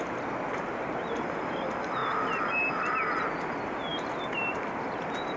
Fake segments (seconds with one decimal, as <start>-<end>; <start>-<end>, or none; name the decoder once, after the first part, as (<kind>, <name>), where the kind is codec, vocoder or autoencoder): 3.9-5.4 (vocoder, BigVGAN v2)